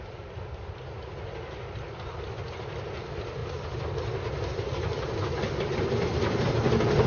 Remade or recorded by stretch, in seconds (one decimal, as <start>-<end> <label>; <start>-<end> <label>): 0.0-3.4 recorded; 3.4-4.2 remade; 4.2-7.1 recorded